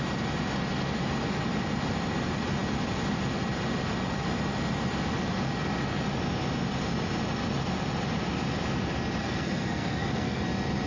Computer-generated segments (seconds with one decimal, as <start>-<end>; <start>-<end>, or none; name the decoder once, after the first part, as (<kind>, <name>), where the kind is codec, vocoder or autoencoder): 9.2-10.4 (codec, SNAC)